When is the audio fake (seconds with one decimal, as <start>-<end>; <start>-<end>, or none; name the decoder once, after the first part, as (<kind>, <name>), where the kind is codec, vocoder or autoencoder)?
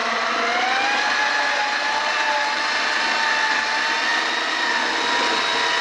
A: none